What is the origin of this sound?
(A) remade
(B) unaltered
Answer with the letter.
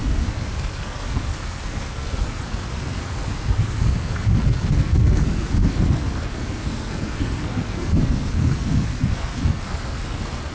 A